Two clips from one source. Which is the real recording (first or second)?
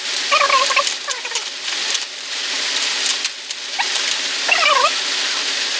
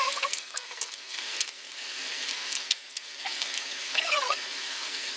first